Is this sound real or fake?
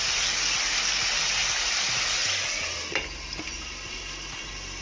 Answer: real